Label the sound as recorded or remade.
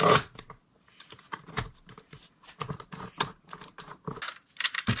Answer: recorded